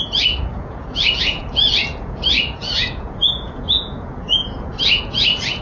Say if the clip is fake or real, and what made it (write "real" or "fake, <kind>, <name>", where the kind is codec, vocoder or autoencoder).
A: fake, vocoder, Vocos